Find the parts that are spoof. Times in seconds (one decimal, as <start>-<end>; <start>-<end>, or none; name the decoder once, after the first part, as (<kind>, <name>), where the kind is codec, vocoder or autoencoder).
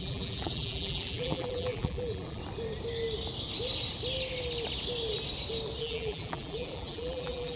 0.0-2.4 (vocoder, BigVGAN v2); 5.8-7.6